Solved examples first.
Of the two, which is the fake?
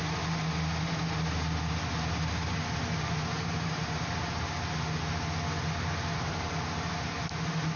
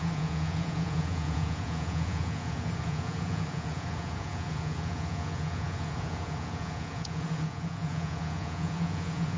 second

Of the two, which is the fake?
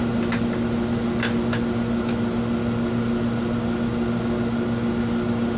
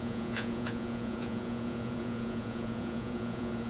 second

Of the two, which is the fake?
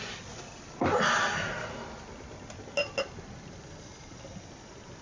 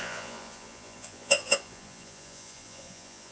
second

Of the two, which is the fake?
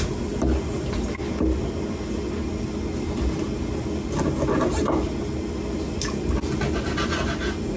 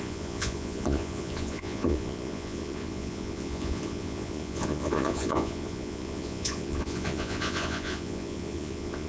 second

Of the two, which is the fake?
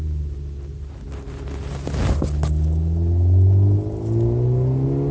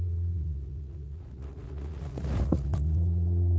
second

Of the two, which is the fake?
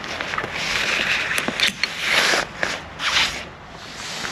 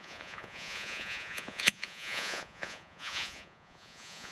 second